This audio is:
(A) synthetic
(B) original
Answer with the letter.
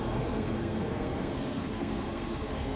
A